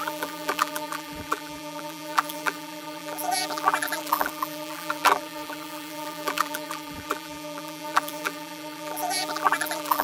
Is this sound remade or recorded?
remade